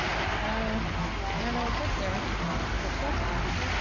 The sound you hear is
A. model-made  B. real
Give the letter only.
B